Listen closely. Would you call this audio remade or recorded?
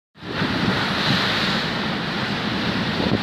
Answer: recorded